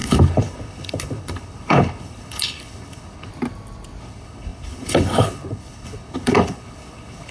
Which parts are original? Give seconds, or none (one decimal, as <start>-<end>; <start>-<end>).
3.3-4.0

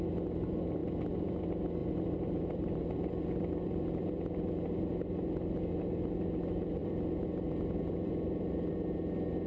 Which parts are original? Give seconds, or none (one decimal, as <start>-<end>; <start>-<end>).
0.0-0.8; 1.4-1.8; 4.0-6.8; 8.7-9.5

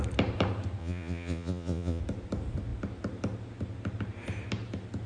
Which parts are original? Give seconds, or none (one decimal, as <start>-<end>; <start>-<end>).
0.0-0.8; 2.0-5.1

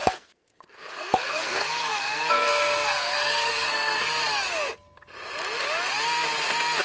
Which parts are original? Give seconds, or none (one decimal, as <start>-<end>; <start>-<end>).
4.0-6.8

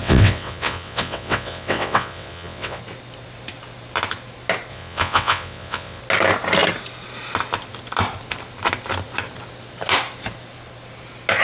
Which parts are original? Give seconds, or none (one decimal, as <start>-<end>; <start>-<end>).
2.8-4.7; 6.0-11.4

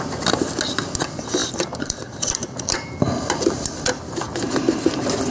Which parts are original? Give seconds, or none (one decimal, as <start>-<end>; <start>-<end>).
0.0-1.4; 3.8-5.3

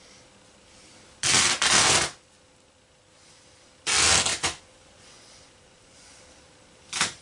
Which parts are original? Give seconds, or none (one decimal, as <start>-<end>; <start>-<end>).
0.0-4.3; 6.2-7.2